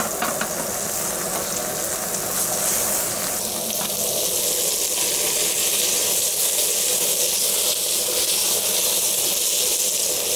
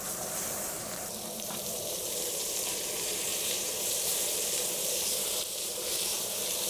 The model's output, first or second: second